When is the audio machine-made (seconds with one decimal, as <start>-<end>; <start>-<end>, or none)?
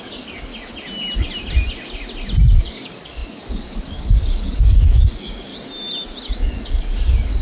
0.0-0.5; 2.6-5.5; 6.3-7.4